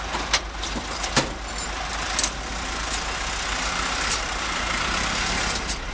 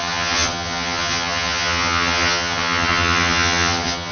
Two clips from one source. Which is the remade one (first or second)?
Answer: second